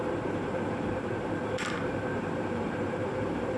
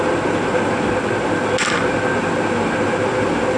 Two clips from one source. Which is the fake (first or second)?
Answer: first